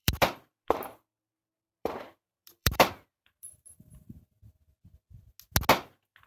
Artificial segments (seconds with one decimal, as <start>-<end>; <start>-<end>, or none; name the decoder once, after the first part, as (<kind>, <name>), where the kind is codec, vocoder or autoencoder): 0.0-3.8 (vocoder, BigVGAN v2)